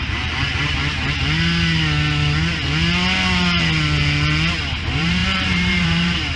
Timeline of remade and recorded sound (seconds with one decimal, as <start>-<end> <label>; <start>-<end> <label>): 0.0-0.8 remade; 0.8-4.6 recorded; 4.6-6.4 remade